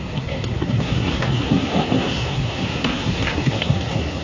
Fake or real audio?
fake